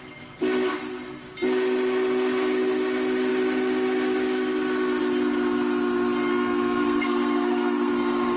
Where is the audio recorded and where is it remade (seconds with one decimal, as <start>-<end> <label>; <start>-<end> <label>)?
0.0-6.3 recorded; 6.3-7.9 remade; 7.9-8.4 recorded